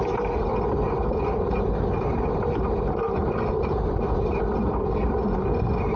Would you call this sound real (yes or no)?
yes